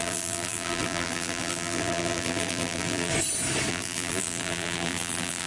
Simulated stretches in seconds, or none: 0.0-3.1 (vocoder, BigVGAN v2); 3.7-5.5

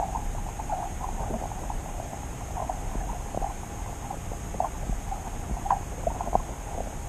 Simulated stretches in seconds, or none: 0.0-2.6 (vocoder, BigVGAN v2)

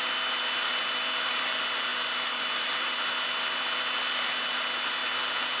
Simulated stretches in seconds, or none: none

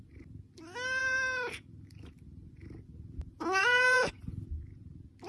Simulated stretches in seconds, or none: 1.0-2.5 (vocoder, BigVGAN v2); 3.6-4.5

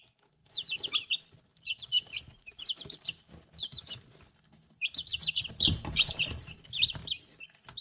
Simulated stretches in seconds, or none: 0.4-0.9 (vocoder, BigVGAN v2); 1.5-2.2; 5.1-6.3

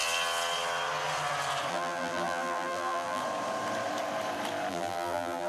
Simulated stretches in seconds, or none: 1.7-3.2 (vocoder, BigVGAN v2); 4.7-5.5

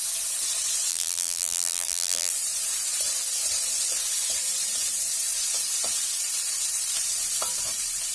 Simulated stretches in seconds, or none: 0.9-2.3 (vocoder, BigVGAN v2)

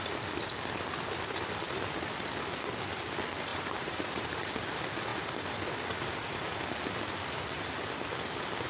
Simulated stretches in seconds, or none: 3.5-4.6 (vocoder, BigVGAN v2)